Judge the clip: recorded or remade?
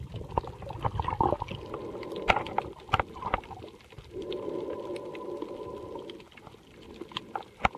recorded